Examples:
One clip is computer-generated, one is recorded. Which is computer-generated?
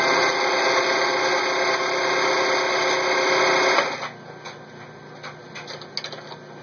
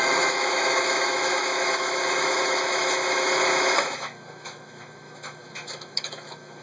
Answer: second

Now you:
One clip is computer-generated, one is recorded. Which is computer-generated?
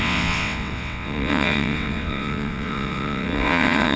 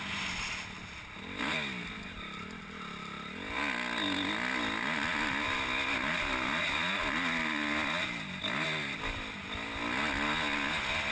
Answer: first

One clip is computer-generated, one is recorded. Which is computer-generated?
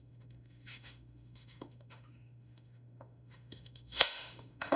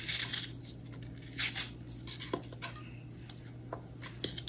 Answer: first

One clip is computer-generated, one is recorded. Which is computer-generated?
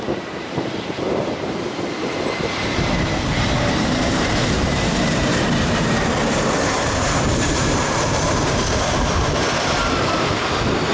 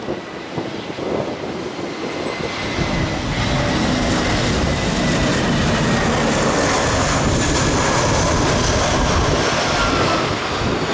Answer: first